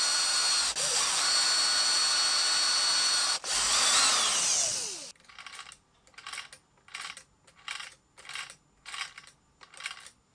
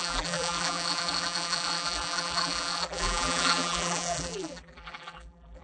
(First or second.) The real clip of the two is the first